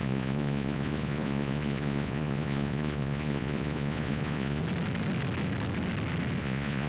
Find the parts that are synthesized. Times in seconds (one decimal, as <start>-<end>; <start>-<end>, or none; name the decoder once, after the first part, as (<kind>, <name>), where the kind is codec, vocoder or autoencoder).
0.0-4.6 (vocoder, Vocos); 6.4-6.9